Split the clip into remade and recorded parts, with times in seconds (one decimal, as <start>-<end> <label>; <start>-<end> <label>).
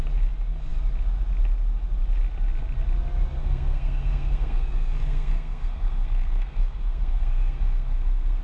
0.0-3.4 recorded; 3.4-8.4 remade